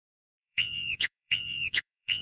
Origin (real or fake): fake